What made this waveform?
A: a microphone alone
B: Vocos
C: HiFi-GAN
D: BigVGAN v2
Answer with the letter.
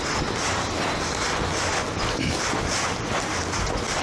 A